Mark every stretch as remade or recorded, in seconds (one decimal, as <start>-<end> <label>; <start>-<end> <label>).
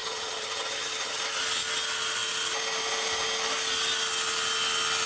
0.0-1.2 remade; 1.2-5.1 recorded